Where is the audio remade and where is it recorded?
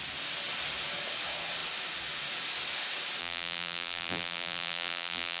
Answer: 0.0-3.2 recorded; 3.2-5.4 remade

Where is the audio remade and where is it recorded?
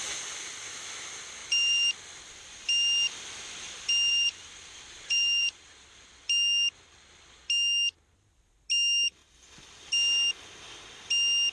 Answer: 0.0-1.4 recorded; 1.4-2.2 remade; 2.2-4.1 recorded; 4.1-5.5 remade; 5.5-11.5 recorded